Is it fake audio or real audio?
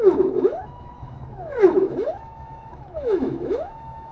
fake